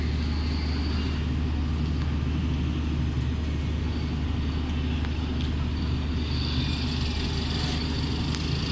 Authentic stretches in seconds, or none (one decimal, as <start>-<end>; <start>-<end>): 0.0-8.7